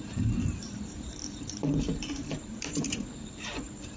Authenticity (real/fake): fake